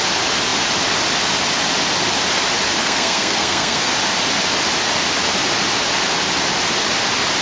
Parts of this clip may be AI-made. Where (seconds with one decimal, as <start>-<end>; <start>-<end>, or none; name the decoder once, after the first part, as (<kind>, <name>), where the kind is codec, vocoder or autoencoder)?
2.8-3.9 (codec, SNAC)